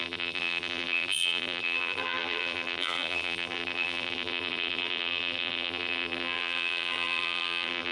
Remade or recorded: remade